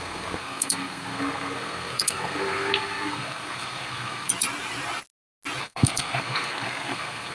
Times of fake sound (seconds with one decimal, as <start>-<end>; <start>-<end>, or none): 0.0-4.3; 5.6-7.3

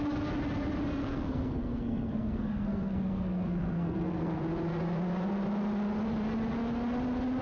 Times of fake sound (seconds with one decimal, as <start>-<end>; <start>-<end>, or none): 1.0-4.4

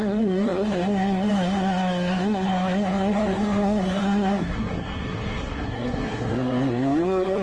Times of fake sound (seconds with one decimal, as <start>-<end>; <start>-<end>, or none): 0.0-7.4

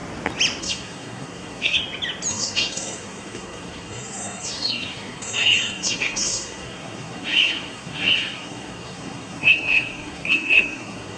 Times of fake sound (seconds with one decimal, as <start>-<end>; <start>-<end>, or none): 0.6-1.8; 2.3-11.2

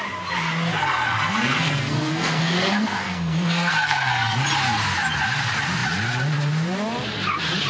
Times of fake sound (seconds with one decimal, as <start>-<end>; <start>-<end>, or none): 0.8-4.4